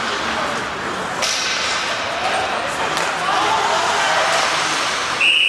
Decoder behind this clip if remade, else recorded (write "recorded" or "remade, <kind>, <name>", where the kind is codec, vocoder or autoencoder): recorded